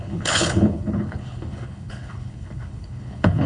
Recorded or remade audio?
remade